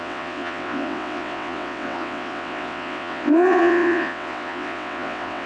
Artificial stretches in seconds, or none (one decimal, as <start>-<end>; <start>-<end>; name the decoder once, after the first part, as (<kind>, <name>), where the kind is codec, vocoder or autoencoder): 0.0-5.5 (vocoder, WaveNeXt)